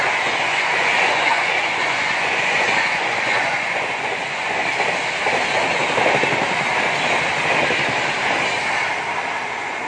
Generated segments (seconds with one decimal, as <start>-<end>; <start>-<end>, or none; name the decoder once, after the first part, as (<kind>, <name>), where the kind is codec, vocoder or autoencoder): 0.0-4.6 (vocoder, Vocos); 9.4-9.9